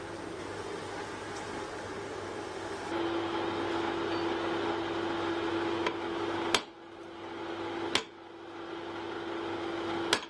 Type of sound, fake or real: real